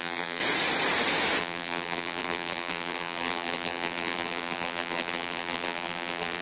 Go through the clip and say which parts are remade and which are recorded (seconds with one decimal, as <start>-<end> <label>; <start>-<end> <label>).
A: 0.0-0.4 remade; 0.4-1.4 recorded; 1.4-6.4 remade